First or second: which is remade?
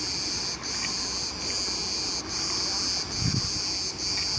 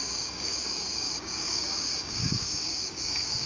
second